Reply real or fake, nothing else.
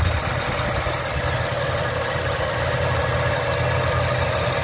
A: real